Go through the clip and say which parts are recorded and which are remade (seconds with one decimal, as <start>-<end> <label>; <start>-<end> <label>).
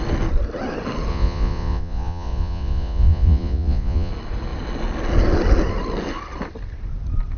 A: 0.0-1.1 recorded; 1.1-4.1 remade; 4.1-7.4 recorded